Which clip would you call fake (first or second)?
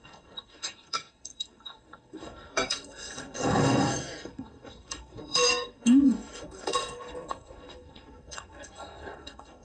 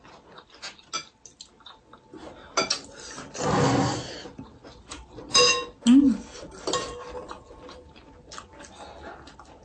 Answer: first